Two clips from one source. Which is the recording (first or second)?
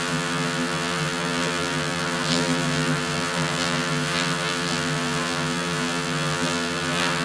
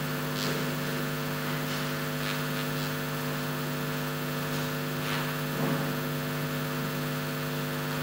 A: second